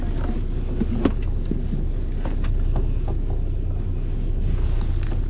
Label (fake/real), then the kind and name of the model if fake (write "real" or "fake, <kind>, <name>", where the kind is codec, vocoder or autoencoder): real